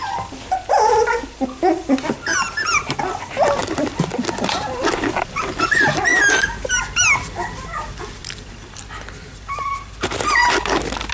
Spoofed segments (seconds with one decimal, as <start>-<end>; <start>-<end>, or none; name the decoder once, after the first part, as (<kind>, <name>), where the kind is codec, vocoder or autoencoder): 2.3-3.0 (vocoder, BigVGAN v2); 6.1-6.7